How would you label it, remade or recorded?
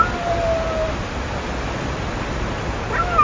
recorded